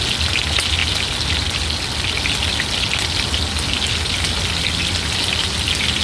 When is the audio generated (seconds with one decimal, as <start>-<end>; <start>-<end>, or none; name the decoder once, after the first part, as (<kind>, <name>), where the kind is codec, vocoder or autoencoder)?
none